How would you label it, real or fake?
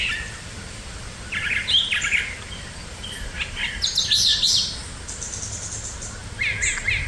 real